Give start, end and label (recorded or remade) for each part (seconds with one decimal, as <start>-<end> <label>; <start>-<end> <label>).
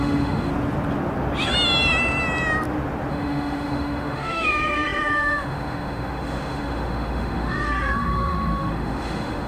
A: 0.0-0.5 remade; 0.5-3.1 recorded; 3.1-9.5 remade